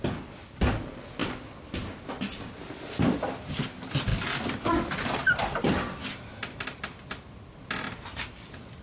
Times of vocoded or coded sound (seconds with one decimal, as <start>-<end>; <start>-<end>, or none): none